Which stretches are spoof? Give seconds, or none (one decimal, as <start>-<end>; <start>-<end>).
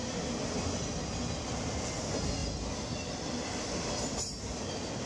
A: none